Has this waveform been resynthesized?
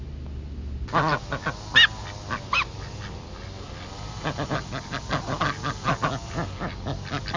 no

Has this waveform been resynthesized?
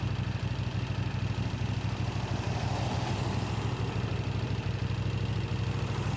no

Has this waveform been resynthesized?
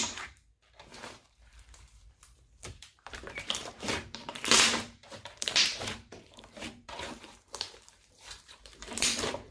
yes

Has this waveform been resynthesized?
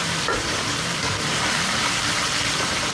yes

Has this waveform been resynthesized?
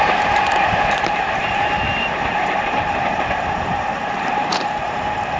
yes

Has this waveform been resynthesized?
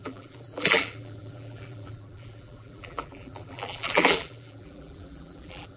yes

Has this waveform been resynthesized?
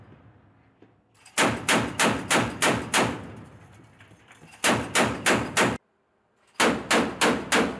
no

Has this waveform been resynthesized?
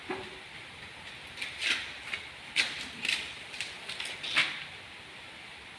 no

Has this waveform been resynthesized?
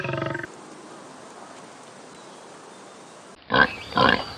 no